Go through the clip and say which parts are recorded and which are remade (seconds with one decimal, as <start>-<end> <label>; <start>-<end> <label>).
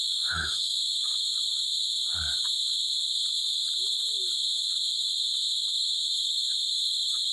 0.0-1.3 remade; 1.3-5.7 recorded; 5.7-7.3 remade